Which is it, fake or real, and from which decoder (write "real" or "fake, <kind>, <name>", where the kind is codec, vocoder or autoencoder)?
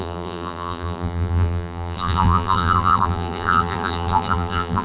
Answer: fake, vocoder, BigVGAN v2